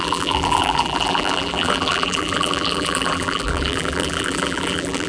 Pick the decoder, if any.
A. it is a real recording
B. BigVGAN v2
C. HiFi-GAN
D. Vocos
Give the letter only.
B